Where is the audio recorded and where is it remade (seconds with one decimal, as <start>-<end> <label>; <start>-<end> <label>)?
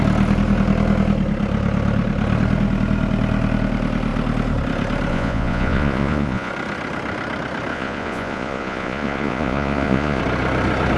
0.0-5.1 recorded; 5.1-6.5 remade; 6.5-7.7 recorded; 7.7-10.2 remade; 10.2-11.0 recorded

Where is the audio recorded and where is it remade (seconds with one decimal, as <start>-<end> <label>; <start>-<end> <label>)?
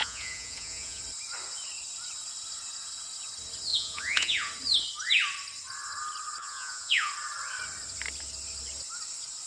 0.0-1.0 remade; 1.0-3.7 recorded; 3.7-4.5 remade; 4.5-6.4 recorded; 6.4-7.1 remade; 7.1-9.5 recorded